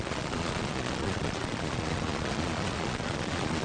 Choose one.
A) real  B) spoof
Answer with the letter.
B